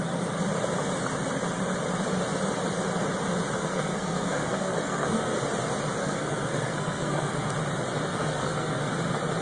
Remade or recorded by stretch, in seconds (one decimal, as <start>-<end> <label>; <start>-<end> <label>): 0.0-3.6 recorded; 3.6-5.4 remade; 5.4-6.0 recorded; 6.0-7.5 remade; 7.5-8.1 recorded; 8.1-8.9 remade; 8.9-9.4 recorded

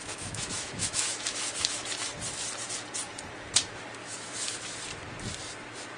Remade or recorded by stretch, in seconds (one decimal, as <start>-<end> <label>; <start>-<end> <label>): 0.0-1.9 remade; 1.9-4.0 recorded; 4.0-4.7 remade; 4.7-6.0 recorded

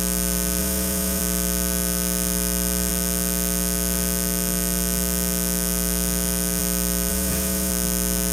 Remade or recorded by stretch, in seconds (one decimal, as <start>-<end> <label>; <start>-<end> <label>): 0.0-0.6 recorded; 0.6-1.2 remade; 1.2-7.1 recorded; 7.1-7.7 remade; 7.7-8.3 recorded